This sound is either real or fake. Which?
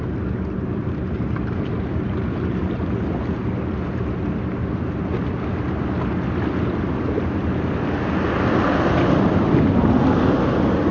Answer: real